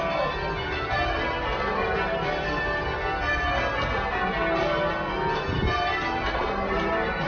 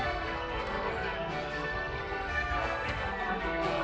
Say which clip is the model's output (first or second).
second